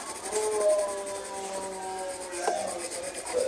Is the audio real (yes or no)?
yes